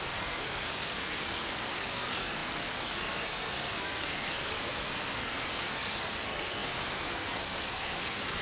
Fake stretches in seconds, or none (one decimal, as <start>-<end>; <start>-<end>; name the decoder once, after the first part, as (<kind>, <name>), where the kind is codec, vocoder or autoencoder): 0.0-8.4 (codec, SNAC)